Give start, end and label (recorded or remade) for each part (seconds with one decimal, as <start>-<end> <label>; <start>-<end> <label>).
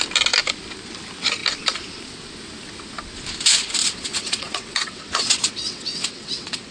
0.0-3.8 recorded; 3.8-6.7 remade